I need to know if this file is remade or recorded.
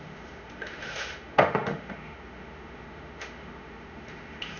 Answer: remade